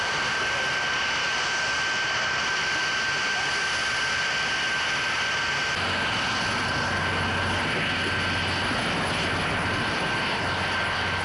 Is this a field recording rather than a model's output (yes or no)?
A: yes